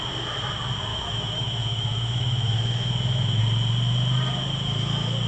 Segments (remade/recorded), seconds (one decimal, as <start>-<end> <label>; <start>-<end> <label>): 0.0-0.9 recorded; 0.9-3.4 remade; 3.4-5.3 recorded